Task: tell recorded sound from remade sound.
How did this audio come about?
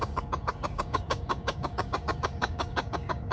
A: remade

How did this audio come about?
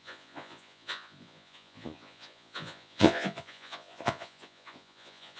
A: remade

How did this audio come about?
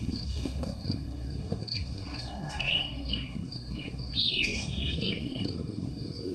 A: remade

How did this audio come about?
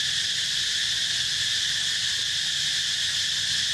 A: recorded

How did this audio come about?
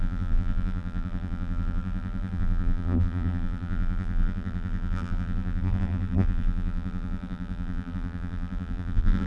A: remade